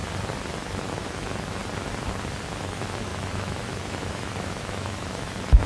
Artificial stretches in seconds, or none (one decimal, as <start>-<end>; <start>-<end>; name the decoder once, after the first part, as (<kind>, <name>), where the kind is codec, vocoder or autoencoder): 0.8-1.6 (autoencoder, DAC-VAE); 2.6-5.7